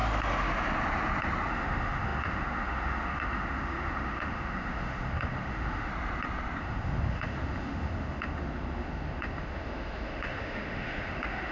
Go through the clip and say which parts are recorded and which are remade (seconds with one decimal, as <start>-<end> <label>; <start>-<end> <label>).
0.0-1.5 recorded; 1.5-5.9 remade; 5.9-6.6 recorded; 6.6-11.5 remade